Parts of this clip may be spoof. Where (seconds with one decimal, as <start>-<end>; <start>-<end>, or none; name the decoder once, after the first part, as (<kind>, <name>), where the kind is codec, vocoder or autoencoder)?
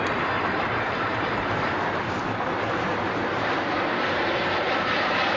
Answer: 0.0-5.4 (vocoder, BigVGAN v2)